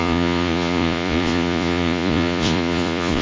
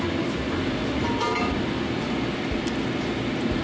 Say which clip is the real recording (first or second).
second